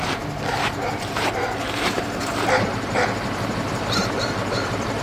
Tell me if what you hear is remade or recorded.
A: remade